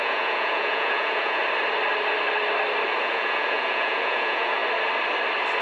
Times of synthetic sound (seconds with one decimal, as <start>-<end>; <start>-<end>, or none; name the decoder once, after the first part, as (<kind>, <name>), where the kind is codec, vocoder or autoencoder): 0.0-1.4 (vocoder, Vocos); 3.0-4.6